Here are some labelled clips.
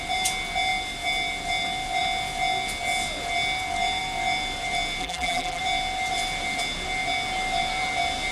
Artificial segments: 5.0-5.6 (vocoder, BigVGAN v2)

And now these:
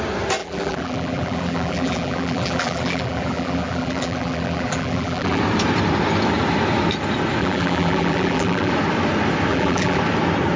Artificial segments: 0.4-5.4 (vocoder, BigVGAN v2); 7.4-8.7; 9.5-10.0

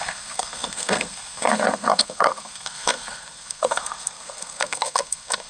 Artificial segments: 0.0-5.5 (codec, SNAC)

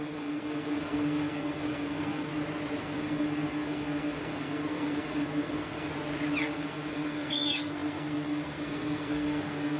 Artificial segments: 0.0-2.3 (codec, SNAC); 2.8-5.9; 6.4-9.8